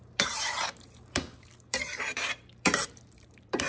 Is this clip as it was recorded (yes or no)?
no